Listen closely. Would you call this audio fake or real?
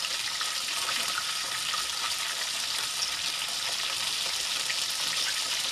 real